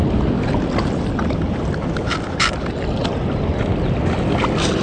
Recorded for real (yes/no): yes